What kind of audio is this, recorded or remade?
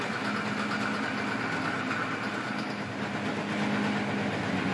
recorded